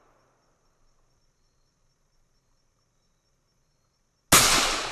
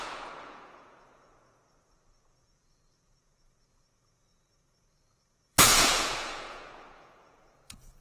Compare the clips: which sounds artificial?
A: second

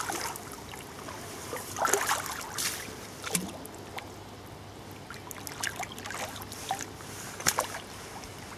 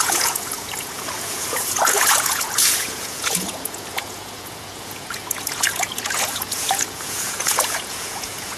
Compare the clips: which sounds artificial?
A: second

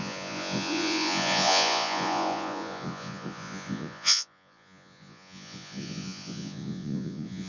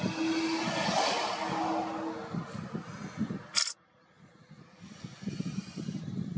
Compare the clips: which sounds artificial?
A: first